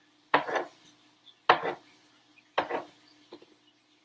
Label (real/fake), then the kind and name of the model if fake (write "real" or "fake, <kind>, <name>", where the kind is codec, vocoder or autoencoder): real